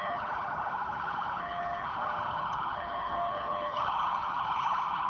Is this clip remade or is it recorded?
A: remade